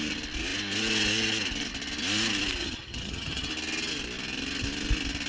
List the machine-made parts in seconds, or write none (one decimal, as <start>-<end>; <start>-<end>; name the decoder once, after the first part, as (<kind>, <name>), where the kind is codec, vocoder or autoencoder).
2.6-3.5 (vocoder, HiFi-GAN)